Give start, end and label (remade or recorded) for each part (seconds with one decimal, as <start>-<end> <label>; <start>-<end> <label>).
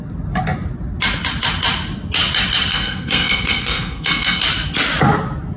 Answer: 0.0-2.7 recorded; 2.7-4.4 remade; 4.4-5.6 recorded